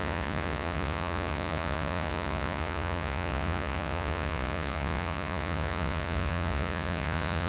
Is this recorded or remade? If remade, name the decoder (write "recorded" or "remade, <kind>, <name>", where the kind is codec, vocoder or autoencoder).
remade, vocoder, Vocos